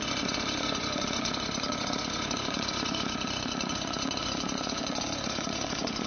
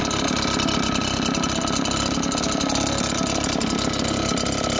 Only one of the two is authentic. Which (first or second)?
second